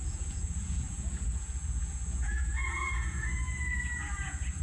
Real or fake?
fake